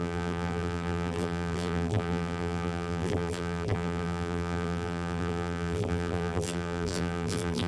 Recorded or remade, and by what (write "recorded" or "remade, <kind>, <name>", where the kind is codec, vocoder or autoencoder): remade, vocoder, BigVGAN v2